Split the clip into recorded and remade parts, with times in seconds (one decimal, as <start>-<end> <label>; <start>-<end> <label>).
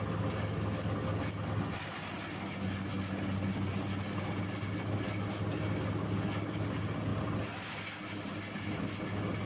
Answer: 0.0-9.5 recorded